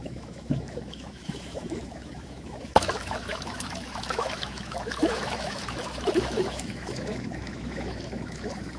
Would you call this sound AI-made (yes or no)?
yes